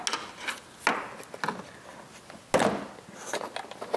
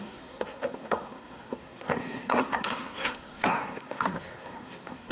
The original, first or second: first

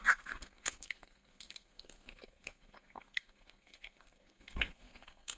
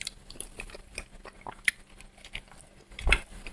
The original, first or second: second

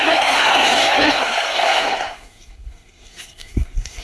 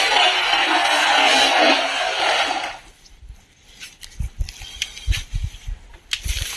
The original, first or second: second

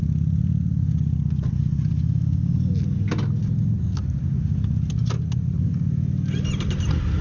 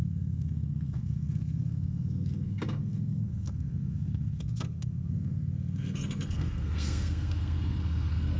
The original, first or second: first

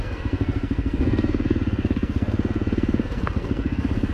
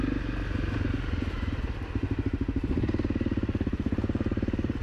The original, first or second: second